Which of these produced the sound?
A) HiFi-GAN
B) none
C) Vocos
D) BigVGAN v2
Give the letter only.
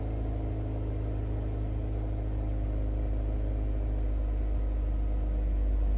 B